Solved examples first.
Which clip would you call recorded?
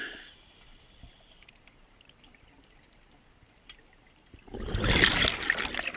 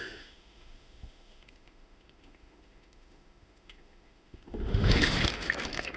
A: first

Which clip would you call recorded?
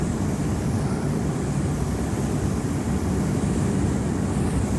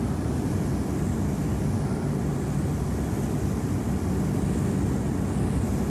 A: second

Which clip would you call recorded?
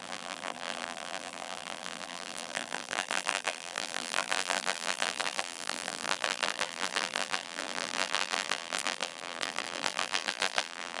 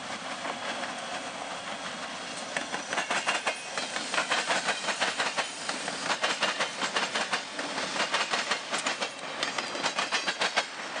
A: second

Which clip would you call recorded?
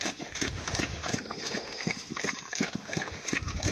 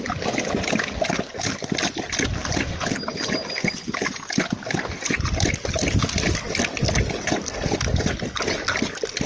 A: second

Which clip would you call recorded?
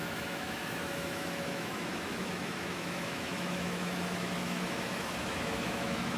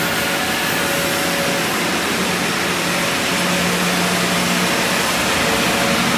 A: second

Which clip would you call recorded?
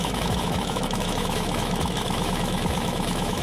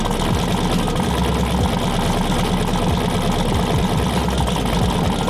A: second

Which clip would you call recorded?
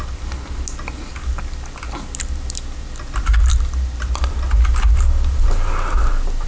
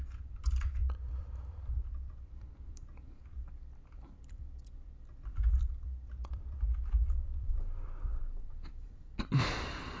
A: first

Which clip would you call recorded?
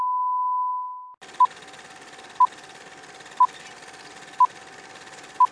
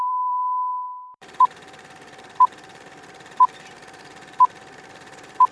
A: first